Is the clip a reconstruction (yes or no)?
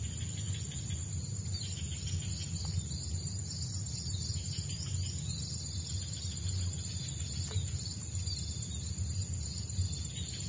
no